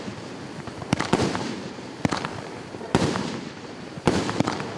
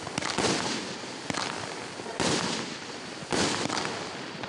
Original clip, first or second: second